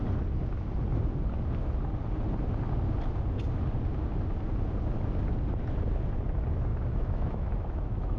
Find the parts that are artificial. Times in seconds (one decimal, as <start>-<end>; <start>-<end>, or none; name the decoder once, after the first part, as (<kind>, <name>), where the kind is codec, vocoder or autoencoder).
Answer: 6.7-8.2 (autoencoder, DAC-VAE)